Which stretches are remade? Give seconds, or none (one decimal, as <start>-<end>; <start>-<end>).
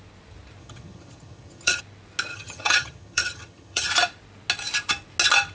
0.6-1.8; 2.3-3.9